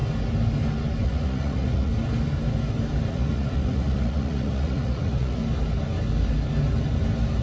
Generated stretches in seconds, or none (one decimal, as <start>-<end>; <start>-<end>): 1.0-1.9; 3.1-5.4